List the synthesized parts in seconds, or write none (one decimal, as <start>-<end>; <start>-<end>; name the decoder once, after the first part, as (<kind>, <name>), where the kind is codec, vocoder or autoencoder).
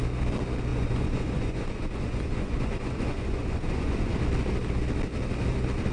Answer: 0.7-4.2 (vocoder, Vocos)